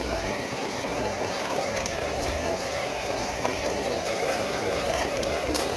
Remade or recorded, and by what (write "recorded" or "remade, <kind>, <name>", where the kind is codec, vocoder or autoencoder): remade, codec, SNAC